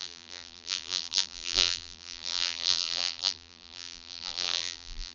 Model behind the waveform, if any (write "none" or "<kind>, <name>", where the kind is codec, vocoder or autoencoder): vocoder, BigVGAN v2